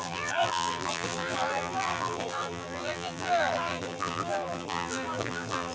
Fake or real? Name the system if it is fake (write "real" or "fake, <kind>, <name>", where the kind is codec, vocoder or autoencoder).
fake, vocoder, BigVGAN v2